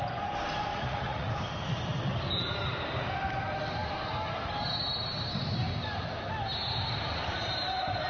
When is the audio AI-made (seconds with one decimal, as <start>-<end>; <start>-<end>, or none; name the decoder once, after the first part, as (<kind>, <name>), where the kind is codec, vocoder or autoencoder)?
0.7-1.3 (vocoder, Vocos)